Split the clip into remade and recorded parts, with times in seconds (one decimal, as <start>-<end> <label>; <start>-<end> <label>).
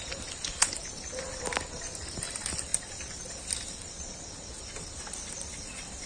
0.0-6.1 recorded